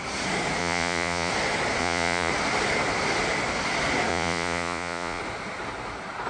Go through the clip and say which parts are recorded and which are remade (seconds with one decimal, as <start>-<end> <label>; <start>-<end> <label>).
0.0-0.6 recorded; 0.6-1.3 remade; 1.3-1.8 recorded; 1.8-2.3 remade; 2.3-4.1 recorded; 4.1-5.2 remade; 5.2-6.3 recorded